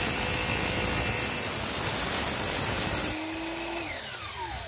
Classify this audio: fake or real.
real